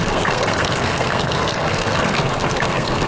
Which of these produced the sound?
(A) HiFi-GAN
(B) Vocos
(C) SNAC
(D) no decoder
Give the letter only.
C